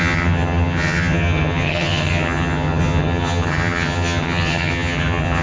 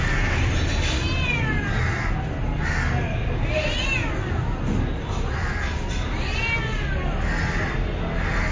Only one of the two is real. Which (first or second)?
second